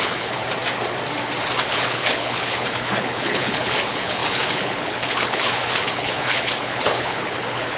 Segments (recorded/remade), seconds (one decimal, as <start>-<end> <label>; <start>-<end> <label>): 0.0-0.4 remade; 0.4-1.7 recorded; 1.7-7.8 remade